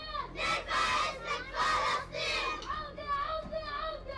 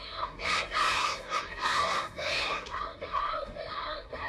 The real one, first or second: first